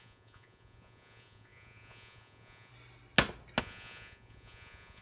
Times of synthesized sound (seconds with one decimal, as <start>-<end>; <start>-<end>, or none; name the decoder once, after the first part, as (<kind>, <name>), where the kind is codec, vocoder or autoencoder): 0.0-2.7 (vocoder, Vocos); 3.6-5.0